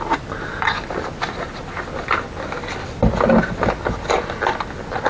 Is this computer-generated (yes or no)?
no